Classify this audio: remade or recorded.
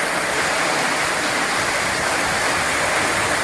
recorded